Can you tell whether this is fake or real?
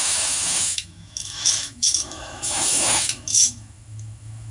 fake